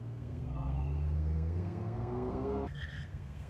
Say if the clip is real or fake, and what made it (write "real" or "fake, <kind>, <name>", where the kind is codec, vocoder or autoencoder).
fake, codec, SNAC